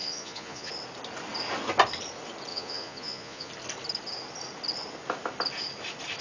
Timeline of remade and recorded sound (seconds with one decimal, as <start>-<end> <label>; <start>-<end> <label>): 0.0-0.7 remade; 0.7-2.5 recorded; 2.5-3.5 remade; 3.5-6.2 recorded